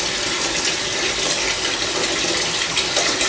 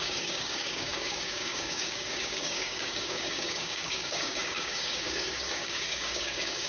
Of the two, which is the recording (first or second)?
first